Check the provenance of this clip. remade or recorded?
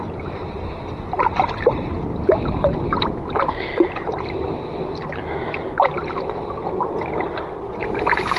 recorded